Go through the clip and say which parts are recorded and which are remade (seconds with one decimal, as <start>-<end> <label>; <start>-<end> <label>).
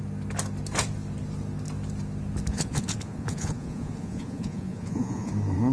0.0-2.5 recorded; 2.5-5.3 remade; 5.3-5.7 recorded